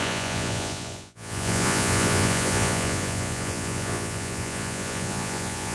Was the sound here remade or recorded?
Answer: remade